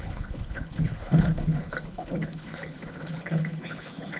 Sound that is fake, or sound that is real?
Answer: fake